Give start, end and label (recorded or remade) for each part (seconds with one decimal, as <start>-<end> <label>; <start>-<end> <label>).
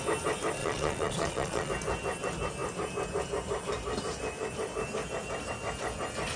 0.0-0.6 recorded; 0.6-1.7 remade; 1.7-6.4 recorded